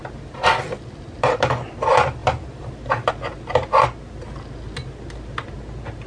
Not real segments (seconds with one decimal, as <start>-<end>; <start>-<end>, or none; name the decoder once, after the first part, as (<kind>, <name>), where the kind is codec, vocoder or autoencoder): 2.2-3.1 (vocoder, BigVGAN v2)